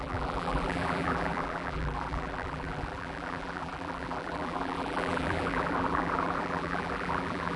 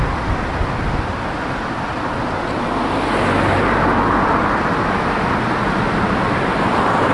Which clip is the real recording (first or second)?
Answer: second